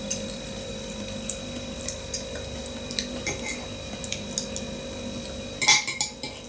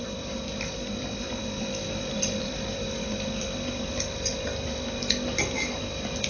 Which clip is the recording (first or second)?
first